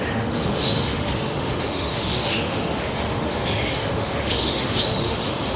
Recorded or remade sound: remade